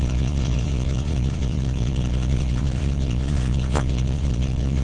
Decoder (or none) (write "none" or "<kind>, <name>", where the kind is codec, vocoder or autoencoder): vocoder, Vocos